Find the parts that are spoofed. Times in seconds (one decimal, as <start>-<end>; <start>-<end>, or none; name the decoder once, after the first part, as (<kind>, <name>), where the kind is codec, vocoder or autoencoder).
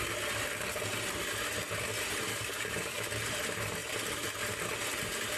2.3-3.0 (codec, DAC)